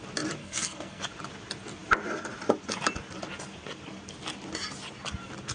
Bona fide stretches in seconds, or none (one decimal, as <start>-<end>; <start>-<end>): 0.0-0.4; 1.0-5.5